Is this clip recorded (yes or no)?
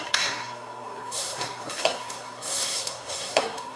no